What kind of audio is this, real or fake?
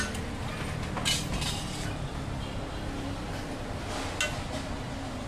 real